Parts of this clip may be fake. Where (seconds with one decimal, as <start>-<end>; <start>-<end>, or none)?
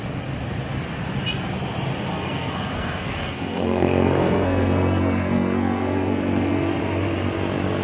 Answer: 2.1-6.8